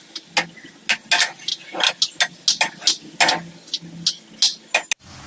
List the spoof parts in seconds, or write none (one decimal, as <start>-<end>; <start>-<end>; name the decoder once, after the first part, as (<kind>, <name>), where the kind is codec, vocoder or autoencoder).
none

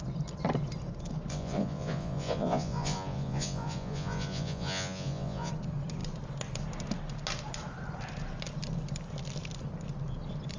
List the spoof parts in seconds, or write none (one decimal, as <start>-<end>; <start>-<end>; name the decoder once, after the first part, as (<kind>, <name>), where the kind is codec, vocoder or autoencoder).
1.3-5.5 (vocoder, Vocos)

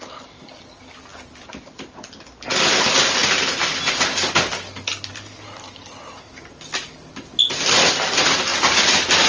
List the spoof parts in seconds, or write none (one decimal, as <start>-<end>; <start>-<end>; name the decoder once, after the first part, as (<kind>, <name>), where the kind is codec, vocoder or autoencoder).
none

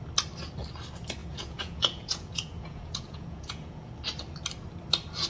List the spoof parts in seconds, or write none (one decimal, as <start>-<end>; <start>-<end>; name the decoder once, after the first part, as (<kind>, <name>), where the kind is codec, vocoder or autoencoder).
1.2-3.9 (vocoder, Vocos)